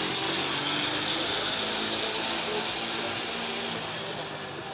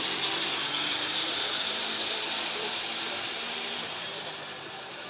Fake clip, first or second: second